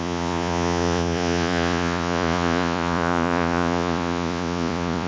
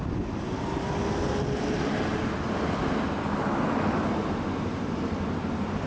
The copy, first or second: first